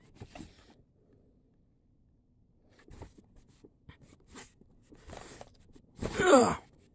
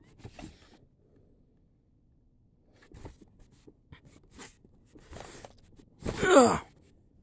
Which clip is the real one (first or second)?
second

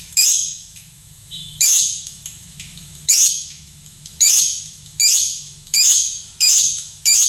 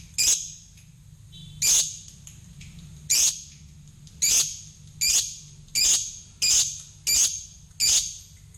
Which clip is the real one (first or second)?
second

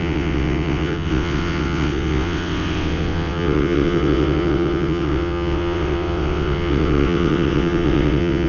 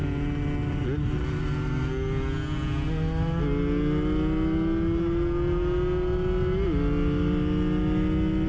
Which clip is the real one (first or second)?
second